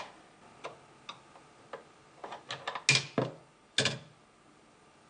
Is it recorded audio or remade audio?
recorded